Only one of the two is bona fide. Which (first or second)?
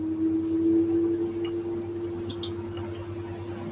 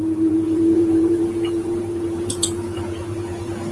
first